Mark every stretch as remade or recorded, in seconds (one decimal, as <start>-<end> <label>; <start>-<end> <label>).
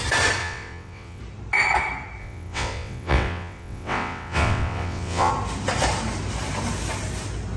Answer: 0.0-0.4 recorded; 0.4-1.2 remade; 1.2-2.2 recorded; 2.2-5.3 remade; 5.3-7.6 recorded